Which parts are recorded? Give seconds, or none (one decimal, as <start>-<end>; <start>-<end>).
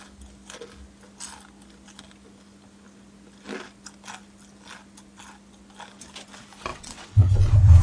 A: 0.0-6.7; 7.3-7.8